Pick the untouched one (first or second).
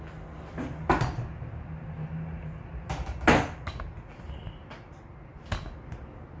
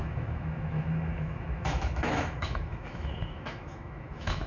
first